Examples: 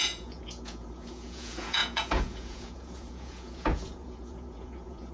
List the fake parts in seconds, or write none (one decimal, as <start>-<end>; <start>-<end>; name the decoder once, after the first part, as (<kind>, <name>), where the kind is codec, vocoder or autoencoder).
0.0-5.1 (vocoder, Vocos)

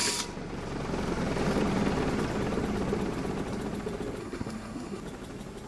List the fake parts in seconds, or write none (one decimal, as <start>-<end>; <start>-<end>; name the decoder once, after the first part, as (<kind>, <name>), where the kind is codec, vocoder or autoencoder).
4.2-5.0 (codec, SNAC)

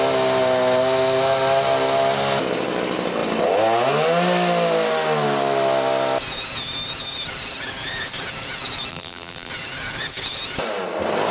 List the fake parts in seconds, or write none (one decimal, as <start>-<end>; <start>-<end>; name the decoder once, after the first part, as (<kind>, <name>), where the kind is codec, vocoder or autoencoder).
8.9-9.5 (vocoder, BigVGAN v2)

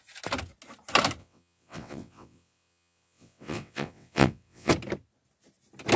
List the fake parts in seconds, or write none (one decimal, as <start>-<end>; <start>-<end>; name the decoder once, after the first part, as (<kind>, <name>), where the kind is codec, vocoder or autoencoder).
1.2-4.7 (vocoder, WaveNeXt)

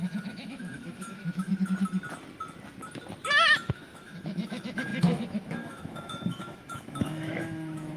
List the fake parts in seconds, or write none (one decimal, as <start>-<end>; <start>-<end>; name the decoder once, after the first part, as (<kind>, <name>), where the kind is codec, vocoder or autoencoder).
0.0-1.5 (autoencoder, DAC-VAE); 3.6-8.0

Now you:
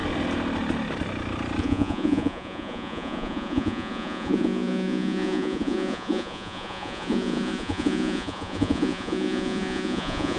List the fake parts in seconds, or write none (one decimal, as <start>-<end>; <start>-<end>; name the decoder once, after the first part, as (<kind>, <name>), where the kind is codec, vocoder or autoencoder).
1.6-10.4 (vocoder, Vocos)

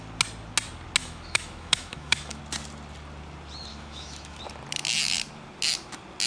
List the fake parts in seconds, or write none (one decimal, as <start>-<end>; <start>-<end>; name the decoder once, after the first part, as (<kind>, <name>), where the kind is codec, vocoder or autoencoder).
1.0-2.4 (autoencoder, DAC-VAE); 3.7-4.4

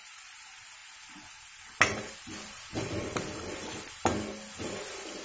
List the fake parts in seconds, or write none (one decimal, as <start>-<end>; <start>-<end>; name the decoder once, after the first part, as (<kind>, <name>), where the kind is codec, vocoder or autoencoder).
none